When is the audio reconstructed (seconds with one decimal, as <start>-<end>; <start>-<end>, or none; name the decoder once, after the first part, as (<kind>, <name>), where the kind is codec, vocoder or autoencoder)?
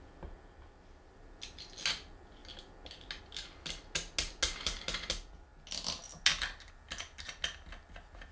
none